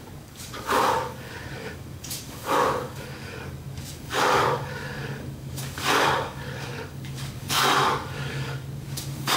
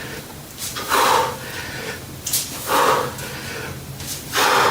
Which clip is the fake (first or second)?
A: first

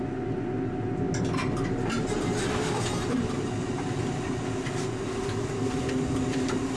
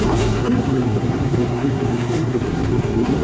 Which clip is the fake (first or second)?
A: second